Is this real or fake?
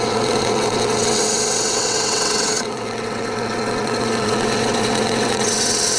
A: fake